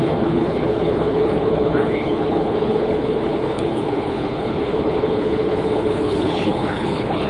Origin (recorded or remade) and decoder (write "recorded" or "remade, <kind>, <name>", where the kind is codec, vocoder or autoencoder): remade, codec, HILCodec